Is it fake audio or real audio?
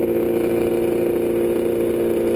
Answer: real